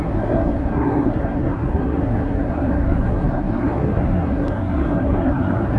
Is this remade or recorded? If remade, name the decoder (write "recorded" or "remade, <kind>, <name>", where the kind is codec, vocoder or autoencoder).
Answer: remade, codec, SNAC